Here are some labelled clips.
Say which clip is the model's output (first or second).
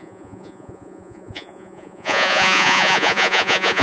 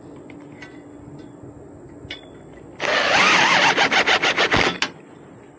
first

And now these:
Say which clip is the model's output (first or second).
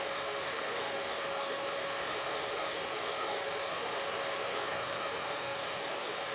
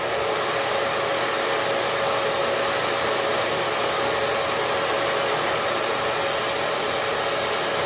first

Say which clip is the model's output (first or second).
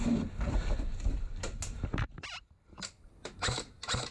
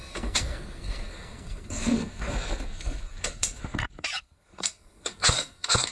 second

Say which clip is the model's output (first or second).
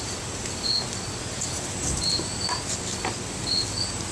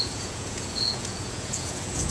second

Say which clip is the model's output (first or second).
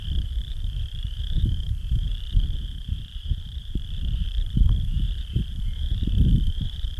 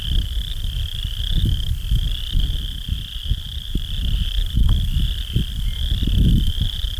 first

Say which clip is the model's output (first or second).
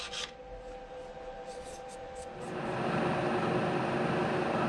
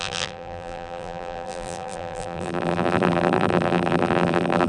second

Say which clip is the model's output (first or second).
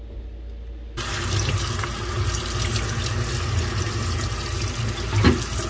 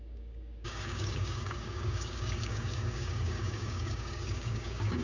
second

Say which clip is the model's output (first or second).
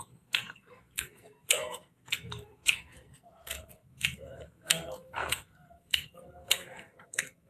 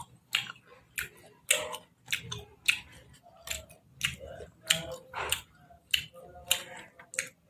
first